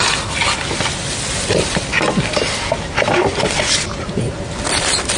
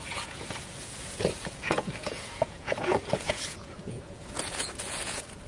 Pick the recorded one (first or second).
first